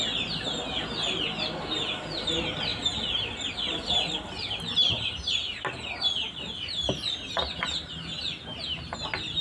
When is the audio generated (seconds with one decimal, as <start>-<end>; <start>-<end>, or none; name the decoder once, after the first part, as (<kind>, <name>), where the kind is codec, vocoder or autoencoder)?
none